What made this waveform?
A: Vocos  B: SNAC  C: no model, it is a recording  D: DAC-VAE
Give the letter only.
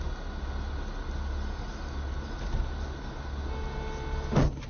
C